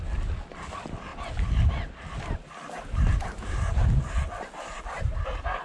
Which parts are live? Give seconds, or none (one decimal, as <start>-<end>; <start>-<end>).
0.0-5.6